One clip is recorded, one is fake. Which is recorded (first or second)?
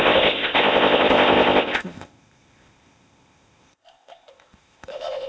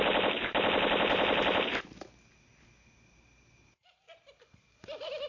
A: second